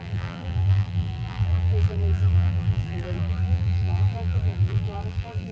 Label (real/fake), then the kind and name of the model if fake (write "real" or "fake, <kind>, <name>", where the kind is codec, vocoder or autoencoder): fake, vocoder, BigVGAN v2